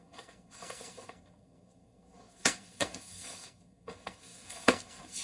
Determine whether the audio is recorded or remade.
remade